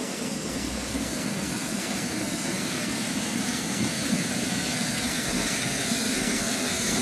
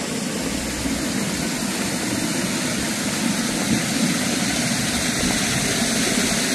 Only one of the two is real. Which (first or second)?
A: second